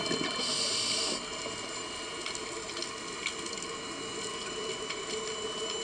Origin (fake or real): real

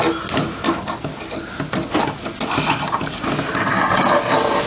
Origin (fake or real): real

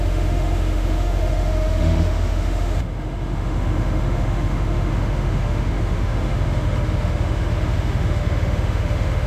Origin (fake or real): fake